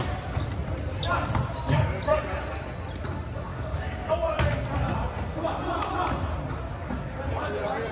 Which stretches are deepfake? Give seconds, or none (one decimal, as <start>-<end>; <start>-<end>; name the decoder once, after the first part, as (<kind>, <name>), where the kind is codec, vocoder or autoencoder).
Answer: 3.5-4.1 (codec, DAC)